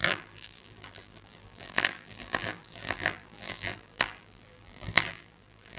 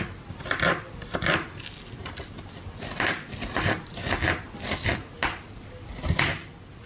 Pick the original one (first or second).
second